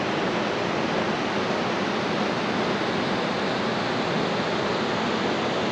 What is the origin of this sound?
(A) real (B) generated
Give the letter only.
A